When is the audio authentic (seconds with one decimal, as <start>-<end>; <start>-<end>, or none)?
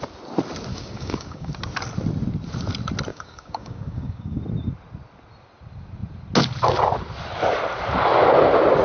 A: 0.0-0.7; 1.5-3.1; 4.4-8.8